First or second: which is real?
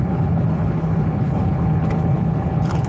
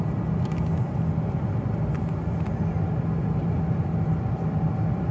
second